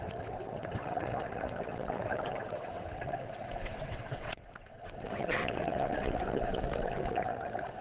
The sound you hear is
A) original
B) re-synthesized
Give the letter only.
B